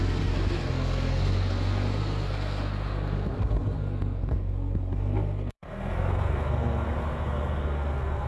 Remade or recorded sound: remade